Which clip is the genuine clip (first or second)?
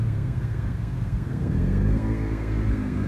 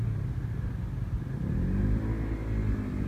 second